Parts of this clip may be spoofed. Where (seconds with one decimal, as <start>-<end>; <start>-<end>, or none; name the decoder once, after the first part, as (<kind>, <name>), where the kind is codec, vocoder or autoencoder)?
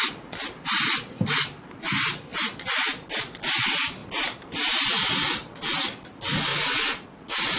none